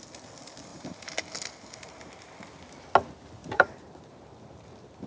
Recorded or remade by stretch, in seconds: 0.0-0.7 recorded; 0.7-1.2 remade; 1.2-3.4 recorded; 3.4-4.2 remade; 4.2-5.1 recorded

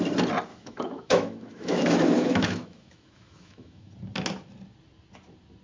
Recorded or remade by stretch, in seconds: 0.0-0.5 recorded; 0.5-3.9 remade; 3.9-5.6 recorded

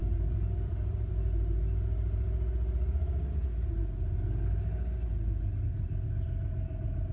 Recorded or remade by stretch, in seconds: 0.0-1.1 remade; 1.1-7.1 recorded